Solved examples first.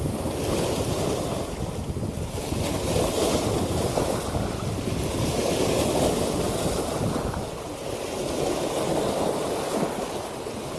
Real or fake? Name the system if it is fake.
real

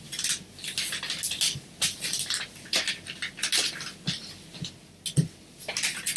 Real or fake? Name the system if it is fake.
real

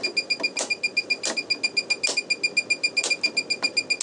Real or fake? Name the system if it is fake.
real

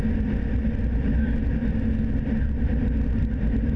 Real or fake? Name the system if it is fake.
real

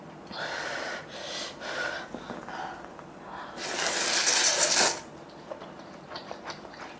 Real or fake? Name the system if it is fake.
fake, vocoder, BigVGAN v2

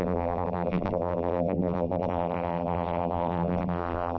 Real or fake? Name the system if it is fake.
fake, vocoder, BigVGAN v2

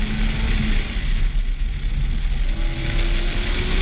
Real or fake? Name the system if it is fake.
real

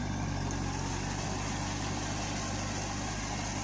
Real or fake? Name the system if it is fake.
real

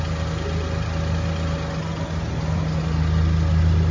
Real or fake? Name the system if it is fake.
real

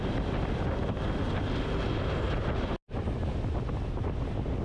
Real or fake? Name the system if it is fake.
real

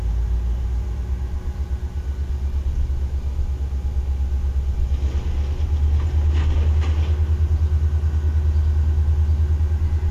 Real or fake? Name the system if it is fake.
real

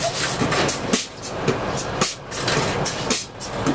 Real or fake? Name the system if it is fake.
real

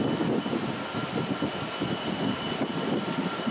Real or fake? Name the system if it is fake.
real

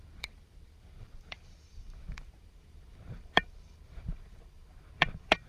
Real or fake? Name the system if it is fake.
fake, vocoder, BigVGAN v2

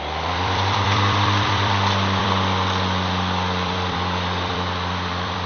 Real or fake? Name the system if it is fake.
fake, vocoder, BigVGAN v2